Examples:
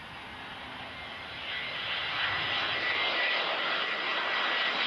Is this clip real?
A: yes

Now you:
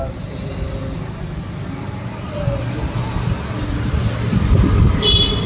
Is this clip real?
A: yes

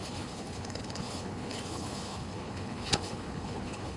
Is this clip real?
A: no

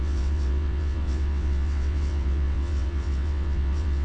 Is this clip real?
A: no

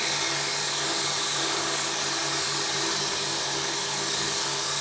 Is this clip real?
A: no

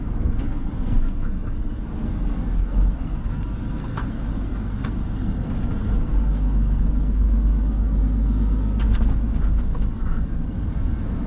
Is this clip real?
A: no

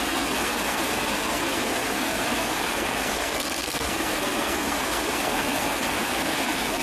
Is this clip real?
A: no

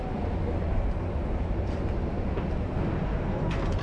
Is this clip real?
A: yes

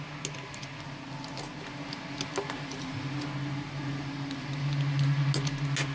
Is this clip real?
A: yes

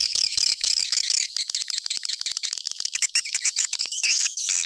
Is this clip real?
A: no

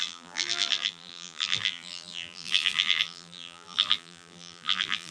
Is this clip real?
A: no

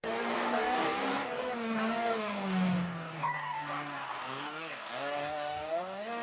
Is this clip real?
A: no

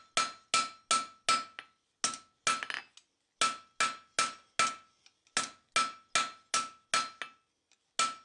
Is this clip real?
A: yes